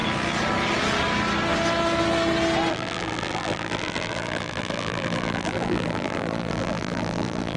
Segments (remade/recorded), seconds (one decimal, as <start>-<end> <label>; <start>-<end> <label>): 0.0-2.7 recorded; 2.7-7.6 remade